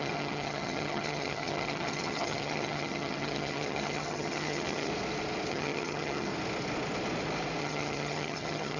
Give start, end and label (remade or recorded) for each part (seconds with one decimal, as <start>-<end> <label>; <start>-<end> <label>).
0.0-4.9 remade; 4.9-5.5 recorded; 5.5-6.3 remade; 6.3-7.6 recorded; 7.6-8.8 remade